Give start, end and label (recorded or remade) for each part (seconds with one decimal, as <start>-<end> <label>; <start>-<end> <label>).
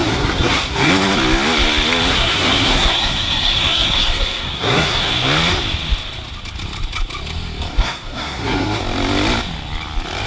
0.0-0.9 remade; 0.9-2.1 recorded; 2.1-5.1 remade; 5.1-7.7 recorded; 7.7-8.8 remade; 8.8-10.3 recorded